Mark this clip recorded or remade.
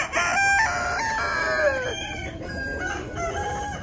recorded